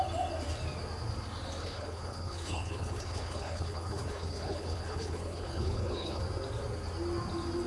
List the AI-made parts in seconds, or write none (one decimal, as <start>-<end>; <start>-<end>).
1.6-6.2